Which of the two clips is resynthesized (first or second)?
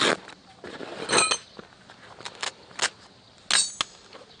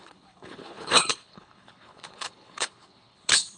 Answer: second